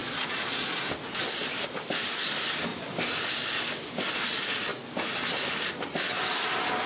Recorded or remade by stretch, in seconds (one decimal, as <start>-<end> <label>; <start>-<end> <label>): 0.0-0.8 remade; 0.8-6.9 recorded